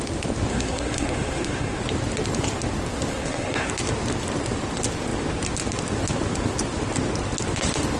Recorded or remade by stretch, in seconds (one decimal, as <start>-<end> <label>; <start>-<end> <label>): 0.0-0.5 recorded; 0.5-1.8 remade; 1.8-3.1 recorded; 3.1-3.7 remade; 3.7-8.0 recorded